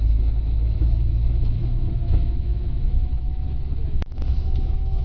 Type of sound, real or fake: fake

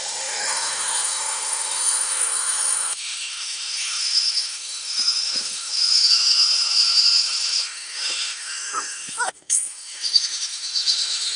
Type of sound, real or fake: fake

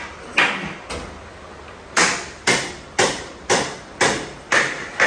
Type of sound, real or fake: real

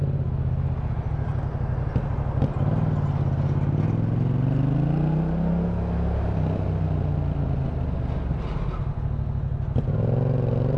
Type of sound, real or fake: real